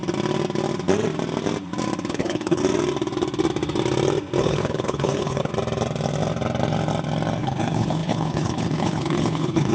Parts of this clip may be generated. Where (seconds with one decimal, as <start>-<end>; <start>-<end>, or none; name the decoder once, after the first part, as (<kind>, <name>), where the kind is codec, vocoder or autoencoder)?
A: 2.1-2.6 (codec, HILCodec); 4.4-5.5; 7.4-9.7